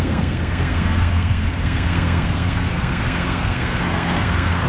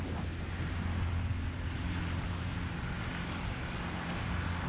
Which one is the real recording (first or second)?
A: second